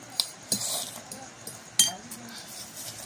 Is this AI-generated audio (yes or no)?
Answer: no